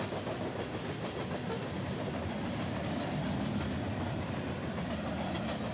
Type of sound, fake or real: real